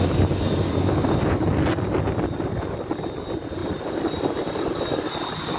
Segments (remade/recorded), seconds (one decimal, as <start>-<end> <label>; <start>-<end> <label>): 0.0-5.6 recorded